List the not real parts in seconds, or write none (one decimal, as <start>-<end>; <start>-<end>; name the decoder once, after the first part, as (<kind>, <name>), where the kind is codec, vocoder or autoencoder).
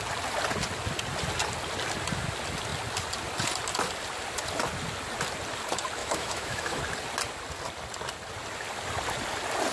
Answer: 6.0-6.8 (autoencoder, DAC-VAE)